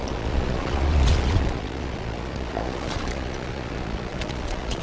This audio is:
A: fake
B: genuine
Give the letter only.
A